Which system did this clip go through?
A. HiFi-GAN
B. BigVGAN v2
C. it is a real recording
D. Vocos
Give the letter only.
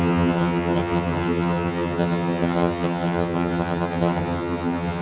A